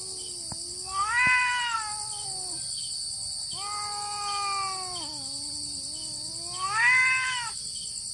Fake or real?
real